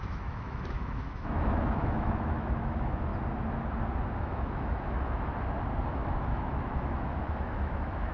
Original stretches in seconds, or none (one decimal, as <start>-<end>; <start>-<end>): 3.1-4.2; 5.3-5.9